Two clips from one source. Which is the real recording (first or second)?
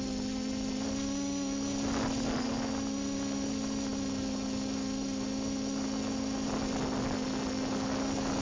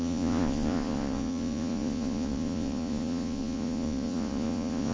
first